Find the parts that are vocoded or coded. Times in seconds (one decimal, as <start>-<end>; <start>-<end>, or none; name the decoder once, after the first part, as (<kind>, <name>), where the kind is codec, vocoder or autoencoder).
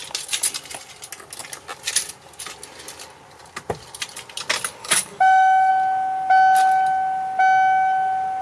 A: 4.8-5.7 (codec, DAC)